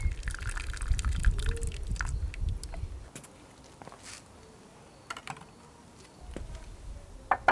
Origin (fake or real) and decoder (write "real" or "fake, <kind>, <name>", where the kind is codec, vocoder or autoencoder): real